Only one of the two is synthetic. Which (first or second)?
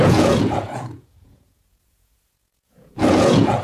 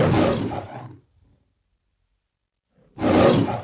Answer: first